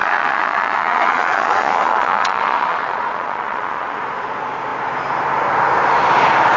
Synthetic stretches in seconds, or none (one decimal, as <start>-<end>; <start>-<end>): 0.0-4.0